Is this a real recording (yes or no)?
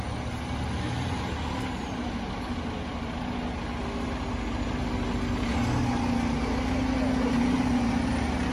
yes